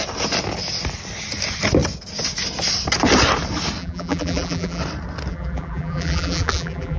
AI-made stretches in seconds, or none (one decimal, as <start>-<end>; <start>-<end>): 3.8-4.8; 5.3-7.0